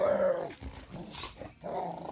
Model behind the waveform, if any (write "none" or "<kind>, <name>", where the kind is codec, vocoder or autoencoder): none